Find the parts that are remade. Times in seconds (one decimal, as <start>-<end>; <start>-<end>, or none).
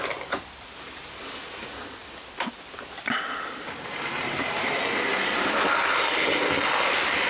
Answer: none